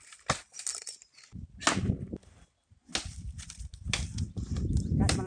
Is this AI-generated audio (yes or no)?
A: no